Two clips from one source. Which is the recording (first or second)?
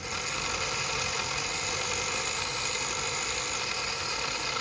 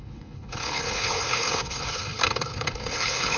first